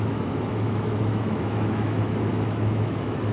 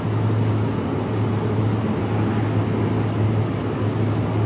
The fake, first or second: first